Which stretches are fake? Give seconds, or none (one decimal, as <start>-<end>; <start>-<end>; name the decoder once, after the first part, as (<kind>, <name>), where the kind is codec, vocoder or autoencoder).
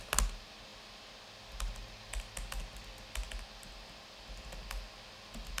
none